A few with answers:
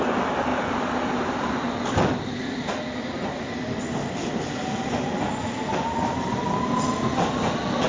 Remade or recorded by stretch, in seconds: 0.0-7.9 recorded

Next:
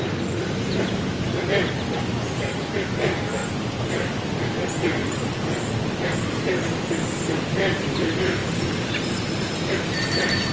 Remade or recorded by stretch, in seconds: 0.0-10.5 recorded

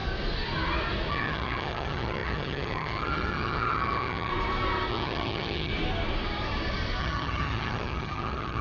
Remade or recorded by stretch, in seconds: 0.0-1.1 recorded; 1.1-4.3 remade; 4.3-4.9 recorded; 4.9-5.7 remade; 5.7-7.0 recorded; 7.0-8.6 remade

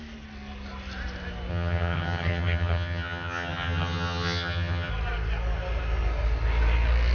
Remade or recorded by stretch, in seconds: 0.0-1.5 recorded; 1.5-4.9 remade; 4.9-7.1 recorded